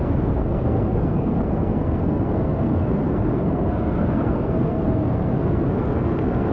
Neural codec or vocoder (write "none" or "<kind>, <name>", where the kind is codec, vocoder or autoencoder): codec, SNAC